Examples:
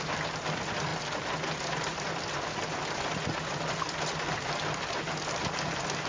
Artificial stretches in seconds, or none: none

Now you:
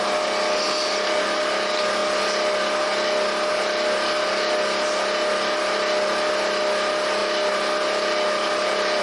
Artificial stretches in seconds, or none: none